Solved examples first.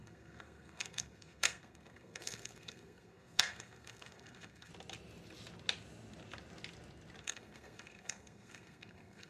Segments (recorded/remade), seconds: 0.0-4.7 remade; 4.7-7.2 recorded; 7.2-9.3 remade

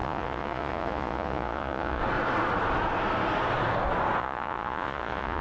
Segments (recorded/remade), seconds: 0.0-2.0 remade; 2.0-4.2 recorded; 4.2-5.4 remade

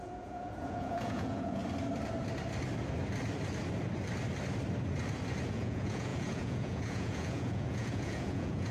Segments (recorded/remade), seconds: 0.0-1.6 remade; 1.6-5.5 recorded; 5.5-8.7 remade

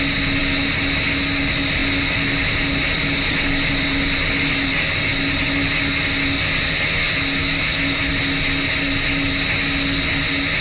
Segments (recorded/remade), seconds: 0.0-7.4 recorded; 7.4-8.1 remade; 8.1-10.6 recorded

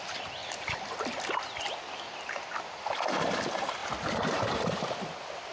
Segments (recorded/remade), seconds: 0.0-0.4 recorded; 0.4-1.0 remade; 1.0-5.5 recorded

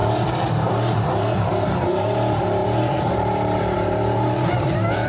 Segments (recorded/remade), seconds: 0.0-5.1 remade

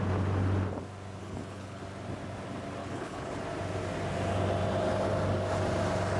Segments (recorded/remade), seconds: 0.0-1.2 recorded; 1.2-1.8 remade; 1.8-2.8 recorded; 2.8-3.4 remade; 3.4-6.2 recorded

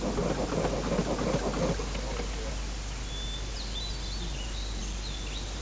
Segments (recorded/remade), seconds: 0.0-5.6 recorded